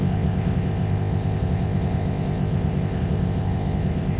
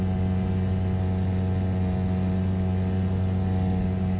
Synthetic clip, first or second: first